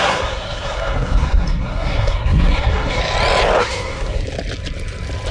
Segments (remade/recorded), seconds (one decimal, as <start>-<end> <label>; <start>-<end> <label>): 0.0-3.0 remade; 3.0-3.6 recorded; 3.6-4.2 remade; 4.2-5.3 recorded